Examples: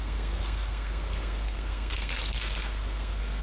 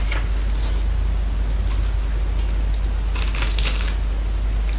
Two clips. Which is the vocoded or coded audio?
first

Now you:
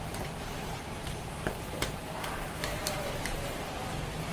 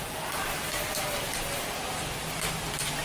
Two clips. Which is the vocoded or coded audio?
first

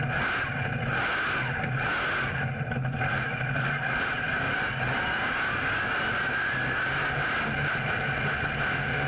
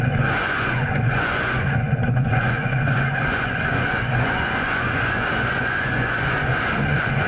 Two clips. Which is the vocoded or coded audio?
second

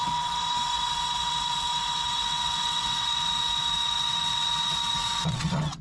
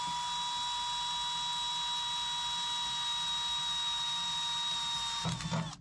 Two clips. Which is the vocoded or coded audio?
first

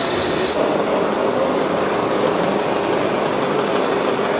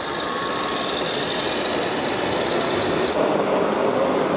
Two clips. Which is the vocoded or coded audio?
second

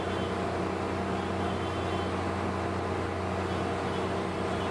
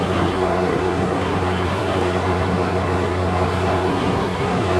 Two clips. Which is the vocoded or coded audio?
second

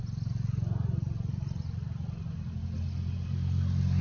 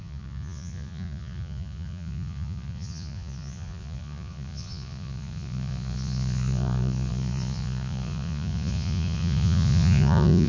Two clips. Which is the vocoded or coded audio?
second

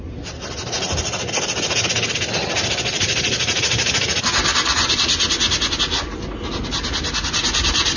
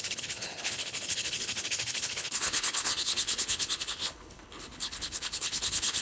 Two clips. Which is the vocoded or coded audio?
second